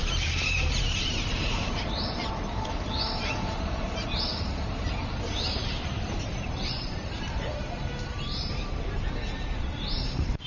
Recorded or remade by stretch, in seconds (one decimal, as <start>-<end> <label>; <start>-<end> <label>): 0.0-10.5 remade